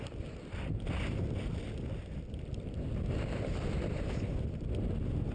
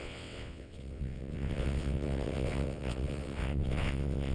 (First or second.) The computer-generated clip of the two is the second